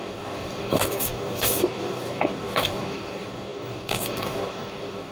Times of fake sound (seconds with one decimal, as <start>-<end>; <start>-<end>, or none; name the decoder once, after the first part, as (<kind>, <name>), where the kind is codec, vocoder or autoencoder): 0.0-5.1 (codec, DAC)